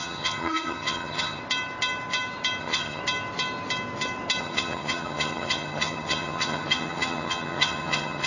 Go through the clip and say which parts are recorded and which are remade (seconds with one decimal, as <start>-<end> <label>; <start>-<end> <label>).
0.0-1.4 remade; 1.4-2.6 recorded; 2.6-3.0 remade; 3.0-4.4 recorded; 4.4-8.3 remade